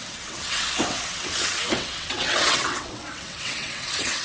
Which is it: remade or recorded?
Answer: remade